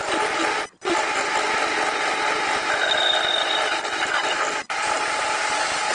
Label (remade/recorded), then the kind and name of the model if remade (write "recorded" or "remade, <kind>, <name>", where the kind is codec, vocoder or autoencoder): recorded